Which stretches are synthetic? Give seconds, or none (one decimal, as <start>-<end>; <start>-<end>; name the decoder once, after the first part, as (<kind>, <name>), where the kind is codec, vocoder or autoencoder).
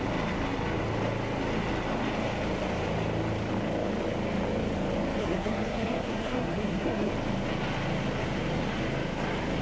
5.2-7.1 (codec, SNAC)